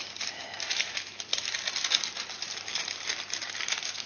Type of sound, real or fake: real